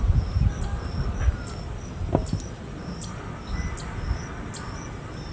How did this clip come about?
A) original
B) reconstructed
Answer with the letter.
A